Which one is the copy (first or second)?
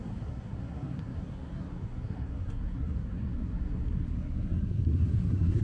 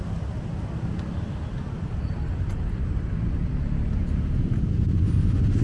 first